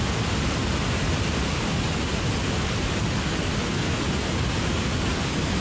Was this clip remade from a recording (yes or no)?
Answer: no